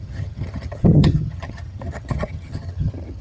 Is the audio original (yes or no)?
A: no